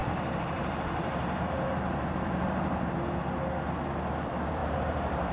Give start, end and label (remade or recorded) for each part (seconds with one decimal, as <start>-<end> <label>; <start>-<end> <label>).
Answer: 0.0-3.2 remade; 3.2-4.6 recorded; 4.6-5.3 remade